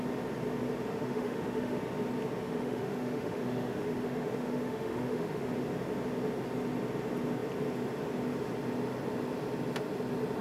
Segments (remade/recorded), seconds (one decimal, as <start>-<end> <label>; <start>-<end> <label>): 0.0-0.9 recorded; 0.9-1.8 remade; 1.8-2.4 recorded; 2.4-5.5 remade; 5.5-10.4 recorded